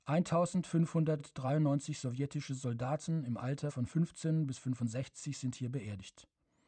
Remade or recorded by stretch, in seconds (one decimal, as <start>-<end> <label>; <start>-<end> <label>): 0.0-1.2 recorded; 1.2-3.7 remade; 3.7-6.7 recorded